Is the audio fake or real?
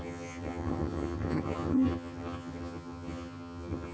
fake